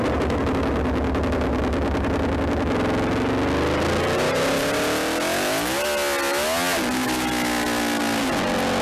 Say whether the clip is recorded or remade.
recorded